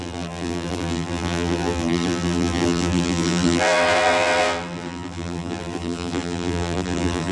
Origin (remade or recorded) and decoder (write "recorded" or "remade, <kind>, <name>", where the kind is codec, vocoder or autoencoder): remade, vocoder, BigVGAN v2